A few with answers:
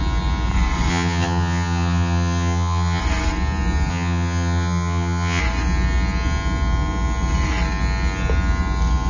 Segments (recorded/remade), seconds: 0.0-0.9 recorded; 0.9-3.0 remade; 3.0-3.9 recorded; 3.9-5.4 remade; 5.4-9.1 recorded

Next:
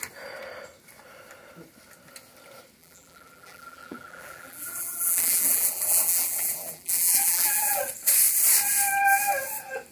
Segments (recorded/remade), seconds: 0.0-2.8 recorded; 2.8-7.8 remade; 7.8-9.9 recorded